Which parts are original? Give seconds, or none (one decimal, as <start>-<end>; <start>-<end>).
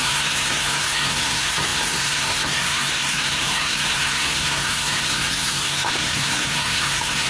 none